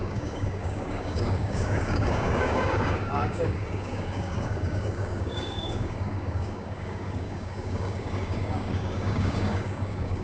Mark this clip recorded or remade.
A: remade